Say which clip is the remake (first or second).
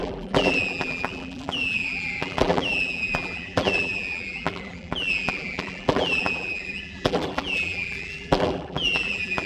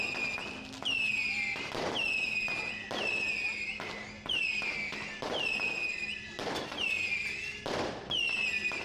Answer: first